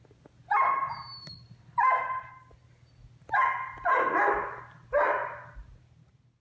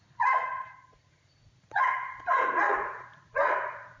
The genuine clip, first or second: first